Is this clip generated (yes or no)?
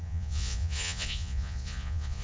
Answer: yes